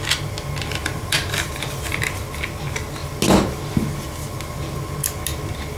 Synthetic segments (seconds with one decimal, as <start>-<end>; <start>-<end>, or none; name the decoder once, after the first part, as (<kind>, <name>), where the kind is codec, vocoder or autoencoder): 0.8-2.0 (vocoder, BigVGAN v2)